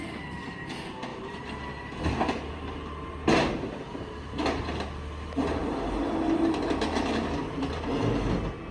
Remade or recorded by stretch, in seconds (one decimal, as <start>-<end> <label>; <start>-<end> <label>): 0.0-1.1 recorded; 1.1-2.0 remade; 2.0-5.6 recorded; 5.6-7.4 remade; 7.4-8.7 recorded